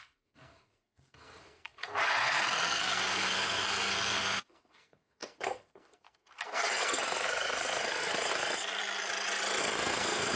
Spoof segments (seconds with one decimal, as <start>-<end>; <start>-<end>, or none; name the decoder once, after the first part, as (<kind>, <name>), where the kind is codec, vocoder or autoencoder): 0.0-8.8 (codec, SNAC); 9.6-10.4